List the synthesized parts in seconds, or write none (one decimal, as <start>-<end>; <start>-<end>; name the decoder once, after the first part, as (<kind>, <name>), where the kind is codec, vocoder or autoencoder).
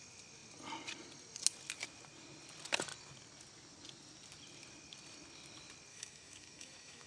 5.9-7.1 (autoencoder, DAC-VAE)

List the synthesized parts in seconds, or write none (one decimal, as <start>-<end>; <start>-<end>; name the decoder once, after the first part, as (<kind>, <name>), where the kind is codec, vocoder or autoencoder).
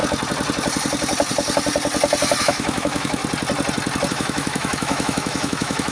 2.4-3.2 (autoencoder, DAC-VAE); 4.1-5.9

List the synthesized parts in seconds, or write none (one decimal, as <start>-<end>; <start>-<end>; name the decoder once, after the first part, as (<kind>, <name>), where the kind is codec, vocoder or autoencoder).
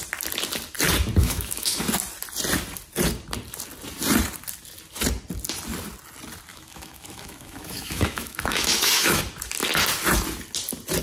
1.2-1.8 (autoencoder, DAC-VAE); 6.5-9.2